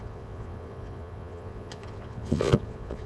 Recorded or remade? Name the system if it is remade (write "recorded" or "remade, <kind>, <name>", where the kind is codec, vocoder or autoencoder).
remade, vocoder, Vocos